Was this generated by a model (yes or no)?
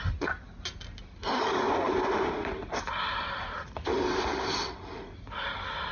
no